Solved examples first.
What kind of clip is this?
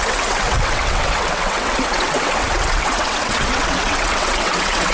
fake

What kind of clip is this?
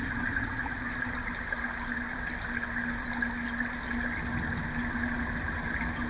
real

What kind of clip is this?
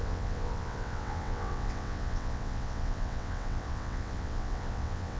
fake